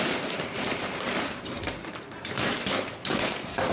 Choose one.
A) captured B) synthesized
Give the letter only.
B